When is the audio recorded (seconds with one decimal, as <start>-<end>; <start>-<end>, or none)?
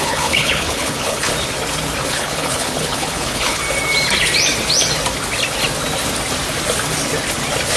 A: 1.3-2.1; 3.6-7.8